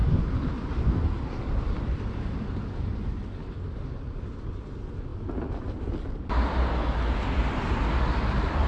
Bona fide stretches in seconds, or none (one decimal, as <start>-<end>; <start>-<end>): 0.0-8.7